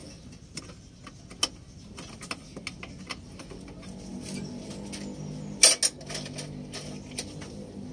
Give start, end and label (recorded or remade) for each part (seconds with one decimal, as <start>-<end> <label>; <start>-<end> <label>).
0.0-0.6 remade; 0.6-4.1 recorded; 4.1-4.7 remade; 4.7-7.9 recorded